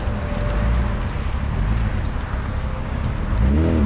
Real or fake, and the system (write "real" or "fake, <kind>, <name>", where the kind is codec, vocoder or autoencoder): real